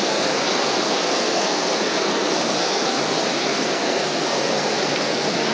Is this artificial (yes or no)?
yes